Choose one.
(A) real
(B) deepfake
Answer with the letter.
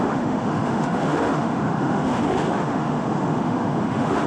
B